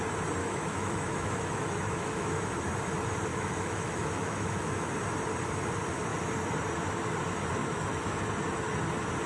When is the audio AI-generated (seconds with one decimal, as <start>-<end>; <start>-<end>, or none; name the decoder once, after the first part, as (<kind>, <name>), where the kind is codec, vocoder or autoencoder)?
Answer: 0.4-2.5 (autoencoder, DAC-VAE); 3.3-4.9; 7.6-8.2